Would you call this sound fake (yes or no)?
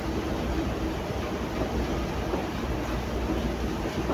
no